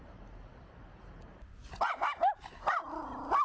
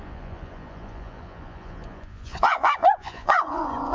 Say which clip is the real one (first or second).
first